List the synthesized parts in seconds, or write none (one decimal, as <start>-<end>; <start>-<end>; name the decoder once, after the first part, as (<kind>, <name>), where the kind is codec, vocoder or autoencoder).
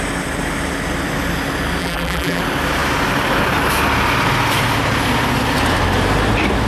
1.8-2.4 (vocoder, BigVGAN v2)